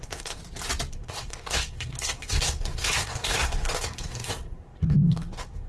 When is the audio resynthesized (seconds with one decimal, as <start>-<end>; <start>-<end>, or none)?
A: 0.0-0.4; 0.9-5.7